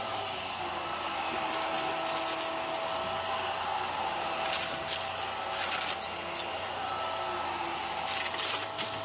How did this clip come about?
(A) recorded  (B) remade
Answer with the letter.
A